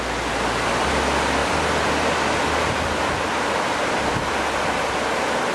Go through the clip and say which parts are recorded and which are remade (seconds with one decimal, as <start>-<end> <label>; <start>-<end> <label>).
0.0-5.5 recorded